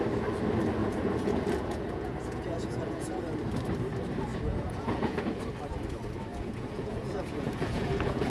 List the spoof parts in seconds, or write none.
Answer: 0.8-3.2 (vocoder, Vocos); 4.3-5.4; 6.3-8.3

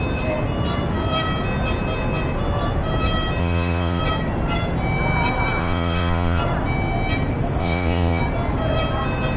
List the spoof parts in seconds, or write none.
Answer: 3.4-4.0 (vocoder, Vocos); 5.6-6.4; 7.6-8.2

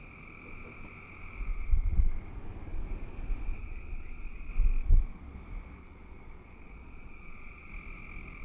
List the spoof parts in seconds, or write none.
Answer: 1.5-2.1 (vocoder, Vocos); 3.6-4.5; 5.8-7.7

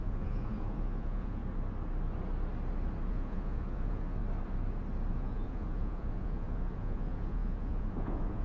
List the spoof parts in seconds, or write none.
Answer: 0.0-1.4 (vocoder, Vocos); 3.1-4.2; 5.1-8.4

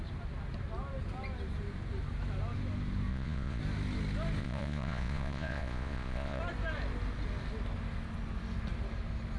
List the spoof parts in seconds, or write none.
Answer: 3.1-3.6 (vocoder, Vocos); 4.4-6.4